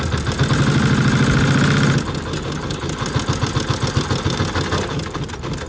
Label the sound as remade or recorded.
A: recorded